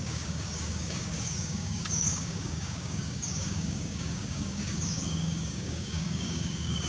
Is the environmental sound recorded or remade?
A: remade